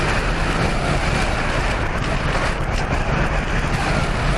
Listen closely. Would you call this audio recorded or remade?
recorded